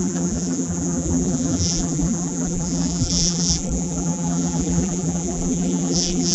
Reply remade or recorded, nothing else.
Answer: remade